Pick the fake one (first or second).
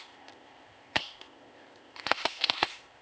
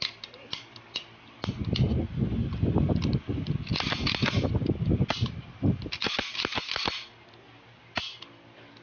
first